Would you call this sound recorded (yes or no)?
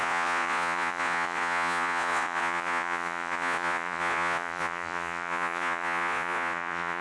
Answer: no